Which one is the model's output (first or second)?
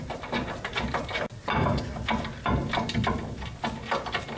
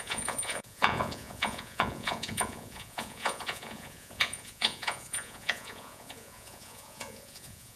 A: second